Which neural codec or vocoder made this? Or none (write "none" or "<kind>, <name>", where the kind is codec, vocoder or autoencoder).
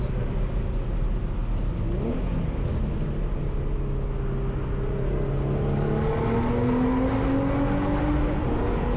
none